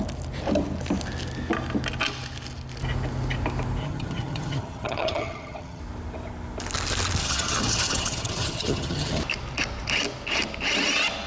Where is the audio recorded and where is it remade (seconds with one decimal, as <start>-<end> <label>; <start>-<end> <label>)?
0.0-3.8 recorded; 3.8-5.8 remade; 5.8-7.2 recorded; 7.2-9.2 remade; 9.2-11.3 recorded